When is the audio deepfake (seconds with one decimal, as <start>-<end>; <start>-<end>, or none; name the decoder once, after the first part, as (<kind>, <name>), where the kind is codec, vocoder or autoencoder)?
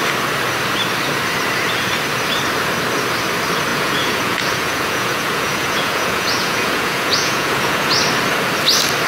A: 3.7-7.9 (vocoder, Vocos)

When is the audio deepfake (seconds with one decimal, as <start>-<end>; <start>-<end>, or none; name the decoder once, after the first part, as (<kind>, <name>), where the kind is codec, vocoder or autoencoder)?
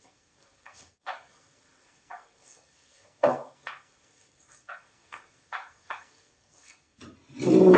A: 0.0-7.0 (codec, SNAC)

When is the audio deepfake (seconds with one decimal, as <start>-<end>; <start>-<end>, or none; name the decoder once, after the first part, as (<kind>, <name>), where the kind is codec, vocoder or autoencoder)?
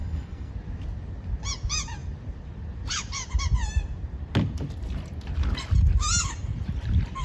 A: 0.0-0.5 (codec, SNAC)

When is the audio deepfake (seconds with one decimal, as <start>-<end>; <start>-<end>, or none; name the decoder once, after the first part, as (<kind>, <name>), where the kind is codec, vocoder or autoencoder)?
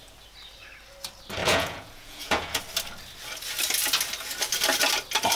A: 1.4-2.6 (vocoder, Vocos)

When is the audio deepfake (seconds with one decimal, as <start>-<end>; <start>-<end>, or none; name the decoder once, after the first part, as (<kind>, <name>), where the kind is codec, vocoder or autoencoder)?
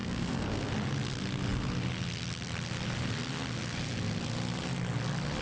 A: 0.0-0.7 (codec, SNAC)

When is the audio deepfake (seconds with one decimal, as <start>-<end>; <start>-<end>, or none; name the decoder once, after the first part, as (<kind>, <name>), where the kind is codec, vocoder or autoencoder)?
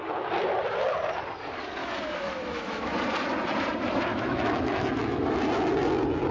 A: 1.8-3.0 (autoencoder, DAC-VAE); 4.1-5.3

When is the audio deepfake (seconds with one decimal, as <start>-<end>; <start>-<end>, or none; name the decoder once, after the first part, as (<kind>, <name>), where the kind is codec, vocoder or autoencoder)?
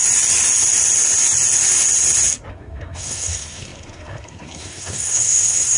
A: 2.5-5.8 (codec, SNAC)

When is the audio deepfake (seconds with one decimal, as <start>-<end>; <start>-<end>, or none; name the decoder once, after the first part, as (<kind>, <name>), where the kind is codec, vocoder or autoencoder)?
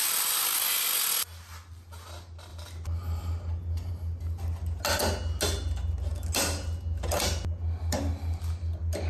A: none